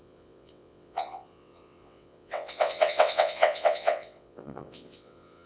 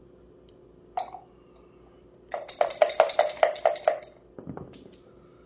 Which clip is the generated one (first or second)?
first